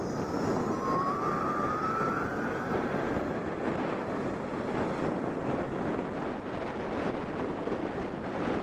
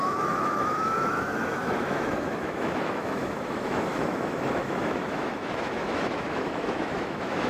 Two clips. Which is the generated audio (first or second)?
second